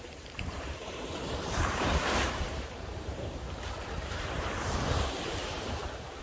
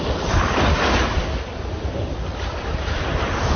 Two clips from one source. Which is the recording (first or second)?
second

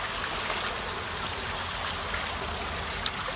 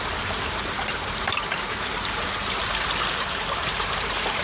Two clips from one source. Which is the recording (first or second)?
first